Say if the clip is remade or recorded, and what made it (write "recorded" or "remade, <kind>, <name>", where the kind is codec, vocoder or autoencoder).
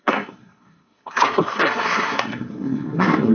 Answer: remade, codec, SNAC